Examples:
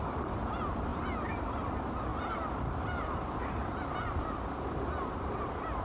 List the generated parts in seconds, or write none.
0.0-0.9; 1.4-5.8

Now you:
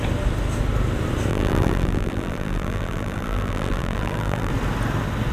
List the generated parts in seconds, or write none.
1.3-4.5

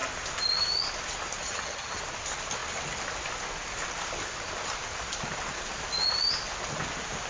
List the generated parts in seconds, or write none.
1.4-2.0

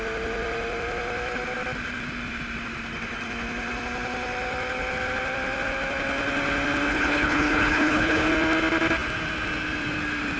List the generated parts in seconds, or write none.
6.9-8.3